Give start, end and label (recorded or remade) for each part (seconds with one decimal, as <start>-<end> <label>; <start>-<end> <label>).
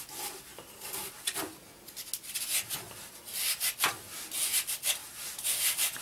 0.0-0.5 recorded; 0.5-1.4 remade; 1.4-5.0 recorded; 5.0-6.0 remade